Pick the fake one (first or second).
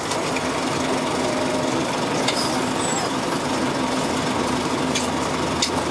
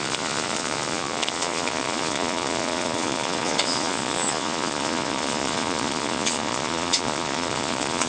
second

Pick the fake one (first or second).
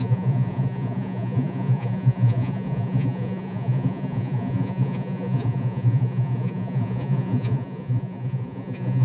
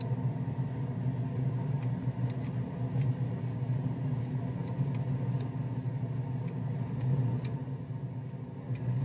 first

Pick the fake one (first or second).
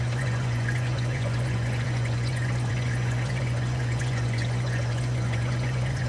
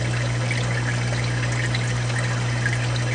first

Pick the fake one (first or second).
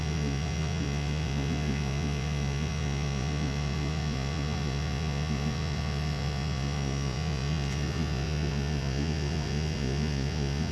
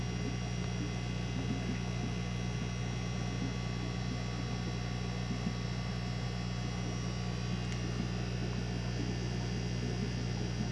first